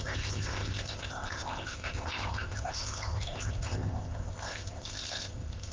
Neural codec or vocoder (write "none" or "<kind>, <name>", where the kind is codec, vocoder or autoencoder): codec, ZipCodec